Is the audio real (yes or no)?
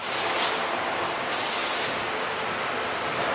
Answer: yes